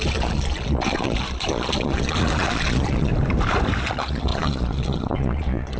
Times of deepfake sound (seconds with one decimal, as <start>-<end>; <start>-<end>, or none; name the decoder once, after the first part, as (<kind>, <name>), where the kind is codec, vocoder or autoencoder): 0.0-3.1 (vocoder, Vocos); 3.8-5.8